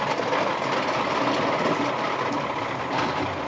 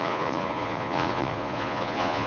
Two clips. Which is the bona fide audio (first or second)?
first